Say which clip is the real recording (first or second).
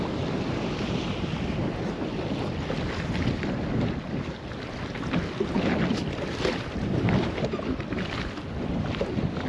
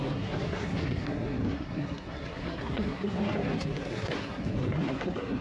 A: first